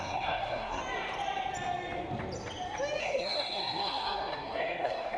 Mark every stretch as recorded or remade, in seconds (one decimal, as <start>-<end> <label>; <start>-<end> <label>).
0.0-0.8 remade; 0.8-3.0 recorded; 3.0-5.2 remade